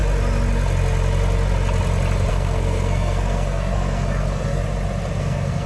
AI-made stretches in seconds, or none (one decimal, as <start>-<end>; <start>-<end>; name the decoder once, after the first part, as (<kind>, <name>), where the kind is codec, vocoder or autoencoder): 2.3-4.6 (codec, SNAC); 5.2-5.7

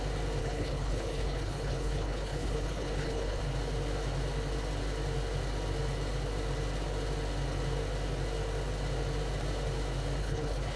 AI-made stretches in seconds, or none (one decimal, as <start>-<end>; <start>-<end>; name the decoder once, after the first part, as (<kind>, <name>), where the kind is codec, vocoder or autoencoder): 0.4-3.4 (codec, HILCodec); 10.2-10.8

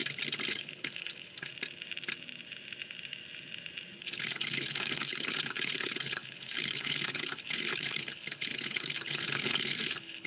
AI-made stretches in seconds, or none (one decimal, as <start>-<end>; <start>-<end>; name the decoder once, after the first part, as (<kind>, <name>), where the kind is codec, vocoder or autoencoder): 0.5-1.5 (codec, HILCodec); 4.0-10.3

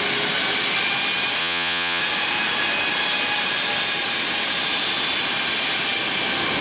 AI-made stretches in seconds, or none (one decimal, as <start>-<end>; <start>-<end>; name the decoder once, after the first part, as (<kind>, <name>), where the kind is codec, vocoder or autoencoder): 1.4-2.0 (vocoder, Vocos)